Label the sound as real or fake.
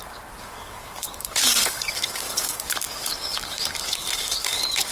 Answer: fake